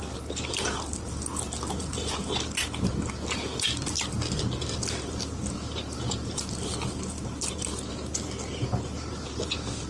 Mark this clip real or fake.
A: real